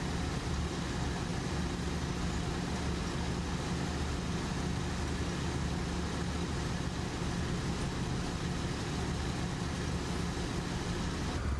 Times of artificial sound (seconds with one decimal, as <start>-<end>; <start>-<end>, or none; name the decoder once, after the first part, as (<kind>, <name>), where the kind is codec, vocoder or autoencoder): none